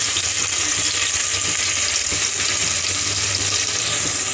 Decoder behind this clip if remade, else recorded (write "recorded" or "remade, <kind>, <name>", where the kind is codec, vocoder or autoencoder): recorded